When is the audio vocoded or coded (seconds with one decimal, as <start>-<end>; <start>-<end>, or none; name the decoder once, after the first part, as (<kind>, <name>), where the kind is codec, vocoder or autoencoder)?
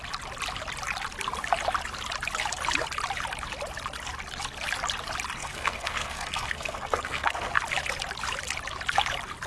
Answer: 5.4-7.6 (codec, SNAC)